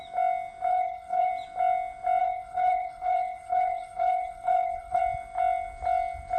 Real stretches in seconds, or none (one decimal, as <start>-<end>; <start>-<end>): 0.0-0.7; 1.3-2.2; 5.0-6.4